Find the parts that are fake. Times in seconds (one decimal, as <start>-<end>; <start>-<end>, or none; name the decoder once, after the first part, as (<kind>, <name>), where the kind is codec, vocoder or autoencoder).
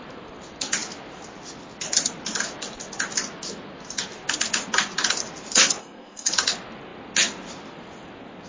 5.8-6.3 (codec, SNAC)